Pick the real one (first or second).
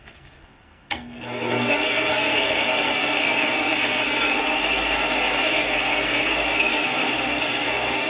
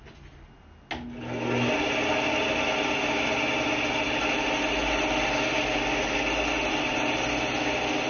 second